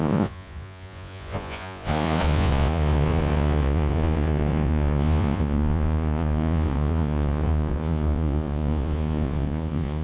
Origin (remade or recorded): remade